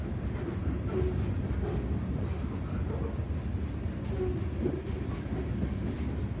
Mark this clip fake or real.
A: real